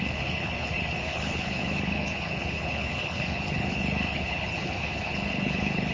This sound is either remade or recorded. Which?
remade